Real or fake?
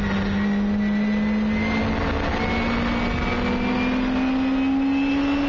real